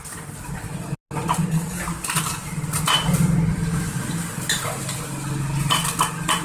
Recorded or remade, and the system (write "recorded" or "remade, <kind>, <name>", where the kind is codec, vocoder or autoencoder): recorded